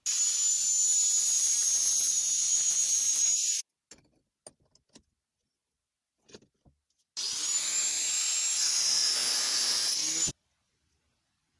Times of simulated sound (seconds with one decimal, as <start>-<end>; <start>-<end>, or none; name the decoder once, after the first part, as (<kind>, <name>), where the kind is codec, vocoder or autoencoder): none